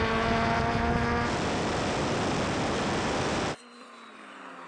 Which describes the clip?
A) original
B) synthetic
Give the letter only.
A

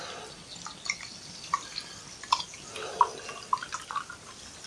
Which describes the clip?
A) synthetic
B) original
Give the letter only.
B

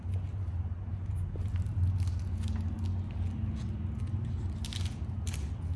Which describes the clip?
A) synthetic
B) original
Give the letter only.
B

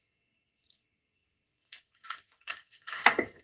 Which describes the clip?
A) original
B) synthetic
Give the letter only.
B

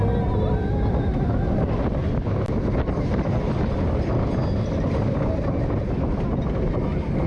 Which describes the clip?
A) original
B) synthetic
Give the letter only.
A